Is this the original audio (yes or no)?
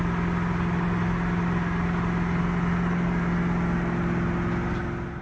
yes